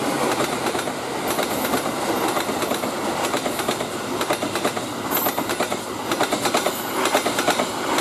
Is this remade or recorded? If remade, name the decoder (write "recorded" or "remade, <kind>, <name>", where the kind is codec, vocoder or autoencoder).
recorded